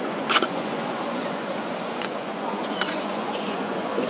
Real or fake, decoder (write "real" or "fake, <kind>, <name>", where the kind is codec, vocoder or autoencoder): fake, vocoder, Vocos